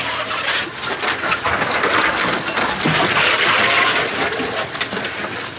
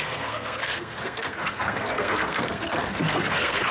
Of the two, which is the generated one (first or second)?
second